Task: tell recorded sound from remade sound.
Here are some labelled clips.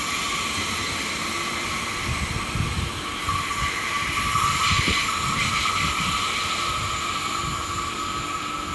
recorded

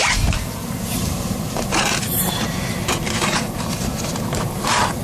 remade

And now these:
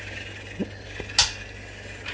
recorded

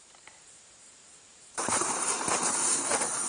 remade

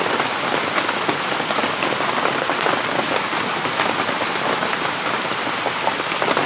recorded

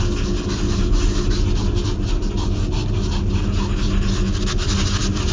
recorded